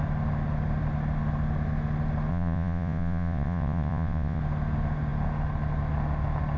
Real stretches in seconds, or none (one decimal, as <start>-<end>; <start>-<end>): 0.0-2.3; 4.4-6.6